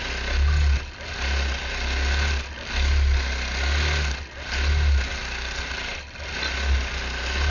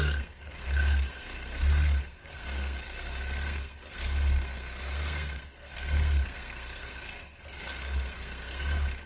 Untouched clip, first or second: first